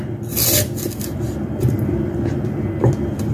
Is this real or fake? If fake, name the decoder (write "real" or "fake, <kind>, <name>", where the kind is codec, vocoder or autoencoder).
real